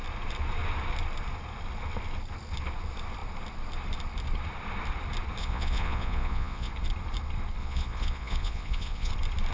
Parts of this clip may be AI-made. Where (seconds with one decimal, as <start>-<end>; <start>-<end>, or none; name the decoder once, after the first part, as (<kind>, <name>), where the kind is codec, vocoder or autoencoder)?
5.4-6.7 (vocoder, Vocos); 7.6-9.1